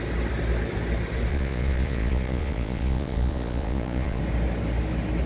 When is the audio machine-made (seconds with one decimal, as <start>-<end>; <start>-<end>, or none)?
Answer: 1.3-4.2